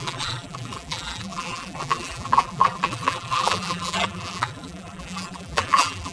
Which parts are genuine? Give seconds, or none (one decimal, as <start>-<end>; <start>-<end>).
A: none